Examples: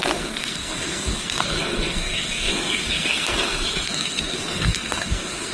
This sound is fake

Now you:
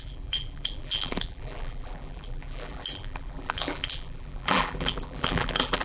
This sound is fake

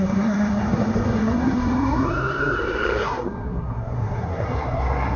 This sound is fake